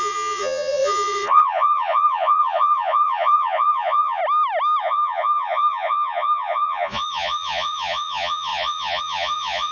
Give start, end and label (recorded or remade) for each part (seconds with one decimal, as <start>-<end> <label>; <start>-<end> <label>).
0.0-4.2 remade; 4.2-4.8 recorded; 4.8-9.7 remade